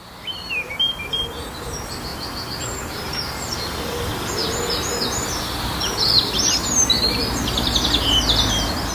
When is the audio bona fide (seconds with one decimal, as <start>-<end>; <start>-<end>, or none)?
0.0-8.9